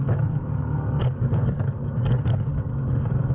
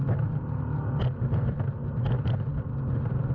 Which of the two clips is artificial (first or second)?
first